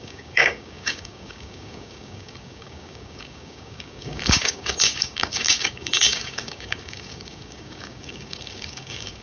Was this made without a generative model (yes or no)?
no